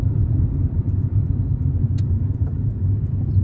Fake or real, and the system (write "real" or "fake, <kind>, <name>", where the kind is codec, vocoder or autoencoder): fake, vocoder, Vocos